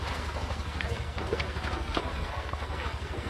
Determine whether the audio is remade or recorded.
remade